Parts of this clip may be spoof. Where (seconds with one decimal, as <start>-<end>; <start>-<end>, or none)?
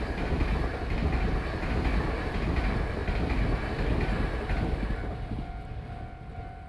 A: none